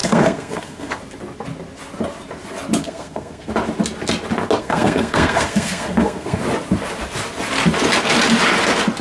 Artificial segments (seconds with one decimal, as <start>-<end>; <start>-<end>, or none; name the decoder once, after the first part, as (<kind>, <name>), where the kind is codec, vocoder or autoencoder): 0.0-1.0 (codec, SNAC); 2.8-3.5; 4.6-6.4

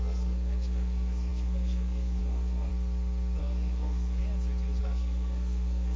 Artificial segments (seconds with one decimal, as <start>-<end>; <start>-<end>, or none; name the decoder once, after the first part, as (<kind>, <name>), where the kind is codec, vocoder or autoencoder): 0.0-2.7 (codec, SNAC); 3.4-4.2; 4.8-6.0

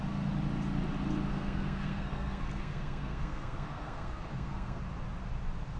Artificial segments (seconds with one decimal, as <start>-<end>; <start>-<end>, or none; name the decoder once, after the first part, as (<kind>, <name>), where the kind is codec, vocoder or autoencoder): 1.3-4.8 (codec, SNAC)